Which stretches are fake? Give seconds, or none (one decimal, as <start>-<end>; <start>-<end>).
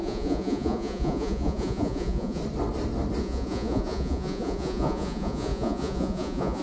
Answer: 0.0-2.4; 3.2-6.6